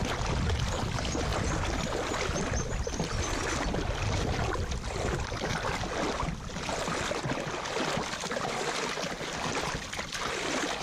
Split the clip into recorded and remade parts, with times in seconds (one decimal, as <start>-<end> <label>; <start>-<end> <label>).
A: 0.0-10.8 recorded

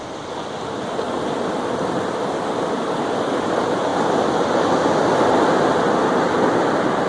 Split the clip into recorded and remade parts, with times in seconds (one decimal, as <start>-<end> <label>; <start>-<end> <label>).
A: 0.0-7.1 recorded

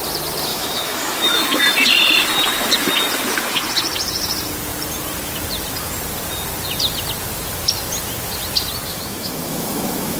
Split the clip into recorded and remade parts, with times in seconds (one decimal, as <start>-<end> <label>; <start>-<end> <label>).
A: 0.0-0.5 recorded; 0.5-1.6 remade; 1.6-8.9 recorded; 8.9-10.2 remade

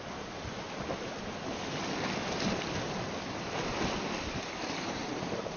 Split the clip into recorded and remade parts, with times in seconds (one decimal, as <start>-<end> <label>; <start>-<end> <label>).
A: 0.0-5.6 recorded

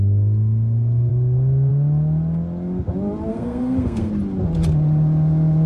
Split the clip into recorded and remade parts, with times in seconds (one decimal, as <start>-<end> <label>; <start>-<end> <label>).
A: 0.0-3.3 recorded; 3.3-4.1 remade; 4.1-5.7 recorded